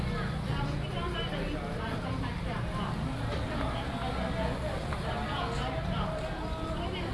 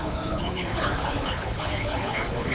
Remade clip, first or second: second